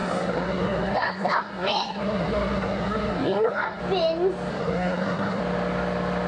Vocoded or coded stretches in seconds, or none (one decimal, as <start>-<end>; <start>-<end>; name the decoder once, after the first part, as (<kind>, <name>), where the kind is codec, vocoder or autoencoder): 0.0-3.8 (codec, SNAC); 4.5-5.4